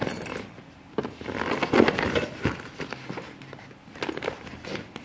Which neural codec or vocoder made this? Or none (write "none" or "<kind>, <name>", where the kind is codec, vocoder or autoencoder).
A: none